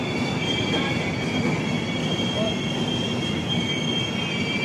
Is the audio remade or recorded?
recorded